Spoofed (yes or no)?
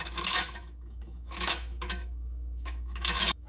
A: yes